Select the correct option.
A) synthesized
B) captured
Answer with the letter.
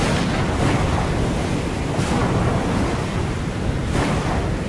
B